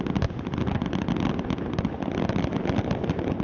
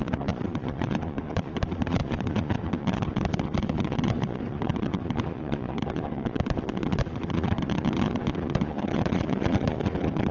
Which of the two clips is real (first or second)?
first